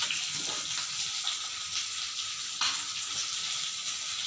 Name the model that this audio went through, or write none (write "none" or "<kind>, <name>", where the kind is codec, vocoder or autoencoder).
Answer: none